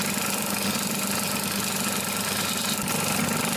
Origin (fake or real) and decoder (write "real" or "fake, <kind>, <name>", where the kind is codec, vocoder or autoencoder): real